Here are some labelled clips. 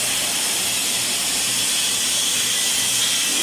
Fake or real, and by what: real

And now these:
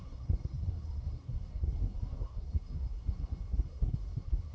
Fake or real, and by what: fake, codec, SNAC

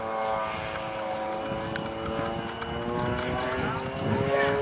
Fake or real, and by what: real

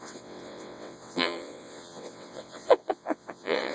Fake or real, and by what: fake, vocoder, WaveNeXt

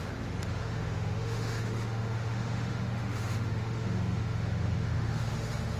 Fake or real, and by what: fake, autoencoder, DAC-VAE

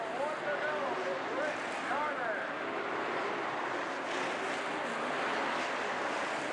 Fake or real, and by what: real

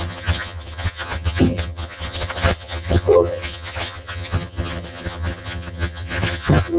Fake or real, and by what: fake, vocoder, HiFi-GAN